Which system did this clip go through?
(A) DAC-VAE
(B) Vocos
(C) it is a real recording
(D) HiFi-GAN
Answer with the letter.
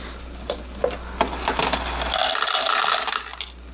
C